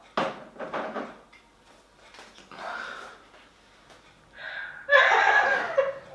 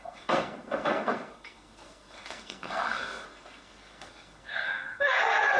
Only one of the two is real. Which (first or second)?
first